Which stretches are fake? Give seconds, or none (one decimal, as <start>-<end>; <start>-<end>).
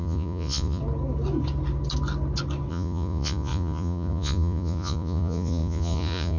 0.0-0.8; 2.7-6.4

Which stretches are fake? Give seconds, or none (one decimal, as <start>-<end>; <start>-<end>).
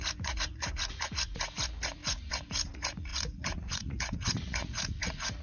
0.0-5.4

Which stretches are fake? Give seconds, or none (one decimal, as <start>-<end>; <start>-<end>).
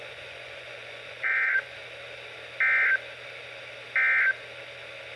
0.0-1.8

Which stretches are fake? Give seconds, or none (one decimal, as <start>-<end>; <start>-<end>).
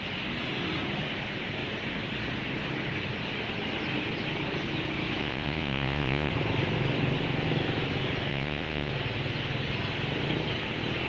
5.2-6.3; 8.3-8.9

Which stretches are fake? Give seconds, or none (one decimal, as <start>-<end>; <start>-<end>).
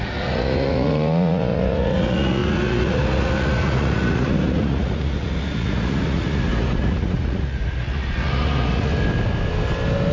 0.0-8.9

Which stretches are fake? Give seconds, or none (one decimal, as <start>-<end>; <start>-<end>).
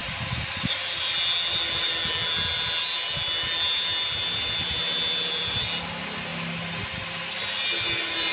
none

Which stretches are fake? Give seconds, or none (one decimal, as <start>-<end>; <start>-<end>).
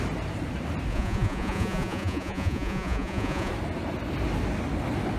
0.9-3.5